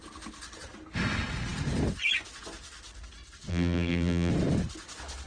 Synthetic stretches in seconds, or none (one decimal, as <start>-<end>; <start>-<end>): 3.5-4.3